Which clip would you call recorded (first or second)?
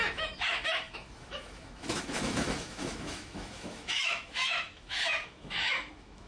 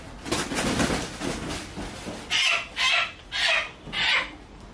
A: second